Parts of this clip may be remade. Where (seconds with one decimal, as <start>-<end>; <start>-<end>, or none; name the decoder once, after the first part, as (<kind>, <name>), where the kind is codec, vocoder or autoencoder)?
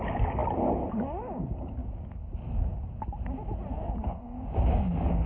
0.0-0.4 (codec, DAC); 0.9-1.8; 3.9-5.3